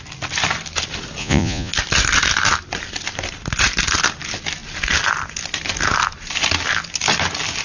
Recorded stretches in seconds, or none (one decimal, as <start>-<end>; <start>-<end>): 0.0-1.2; 1.7-7.6